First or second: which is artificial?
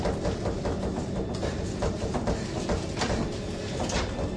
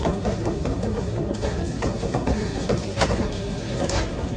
second